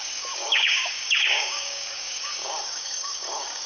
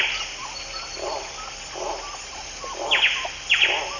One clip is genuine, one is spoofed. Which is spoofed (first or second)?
first